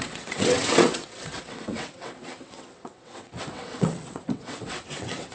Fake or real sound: fake